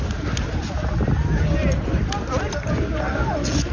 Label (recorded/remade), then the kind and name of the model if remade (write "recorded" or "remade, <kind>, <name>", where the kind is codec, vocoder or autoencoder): recorded